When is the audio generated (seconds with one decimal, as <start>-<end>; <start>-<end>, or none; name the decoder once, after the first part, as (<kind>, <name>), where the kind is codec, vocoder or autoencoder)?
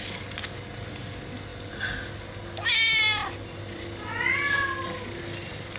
none